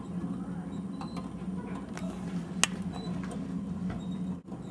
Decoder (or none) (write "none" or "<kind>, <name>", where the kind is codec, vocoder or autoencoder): none